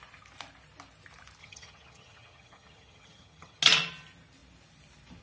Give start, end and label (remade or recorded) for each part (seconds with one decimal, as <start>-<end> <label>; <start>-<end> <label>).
0.0-1.4 recorded; 1.4-3.6 remade; 3.6-5.2 recorded